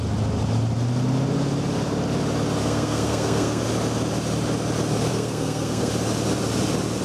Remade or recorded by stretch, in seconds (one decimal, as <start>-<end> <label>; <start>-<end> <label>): 0.0-2.6 recorded; 2.6-3.6 remade; 3.6-5.1 recorded; 5.1-5.9 remade; 5.9-7.0 recorded